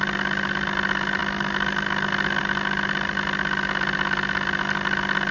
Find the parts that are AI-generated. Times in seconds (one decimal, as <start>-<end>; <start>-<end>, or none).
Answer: none

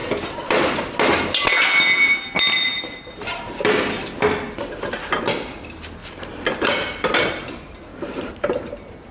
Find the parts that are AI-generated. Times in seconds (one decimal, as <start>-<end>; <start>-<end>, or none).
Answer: 6.0-7.4; 7.9-9.1

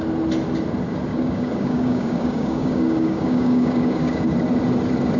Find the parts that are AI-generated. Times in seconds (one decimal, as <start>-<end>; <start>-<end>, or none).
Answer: 1.1-4.2

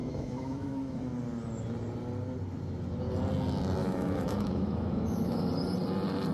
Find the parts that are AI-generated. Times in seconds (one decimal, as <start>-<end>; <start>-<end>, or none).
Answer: 0.0-1.0; 3.8-5.5

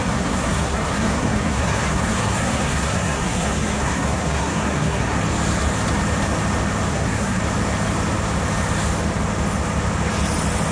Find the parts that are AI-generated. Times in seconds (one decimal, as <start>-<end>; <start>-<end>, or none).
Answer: 0.0-5.2; 6.9-7.4